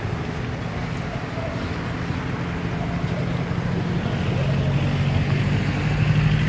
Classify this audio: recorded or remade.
recorded